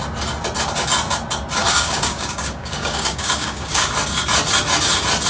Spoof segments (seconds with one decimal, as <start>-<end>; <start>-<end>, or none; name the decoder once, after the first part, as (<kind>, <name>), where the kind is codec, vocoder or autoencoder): 1.6-3.9 (codec, DAC)